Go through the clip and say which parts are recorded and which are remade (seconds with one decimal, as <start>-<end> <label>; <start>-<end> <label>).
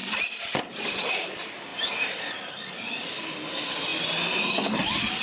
0.0-5.2 recorded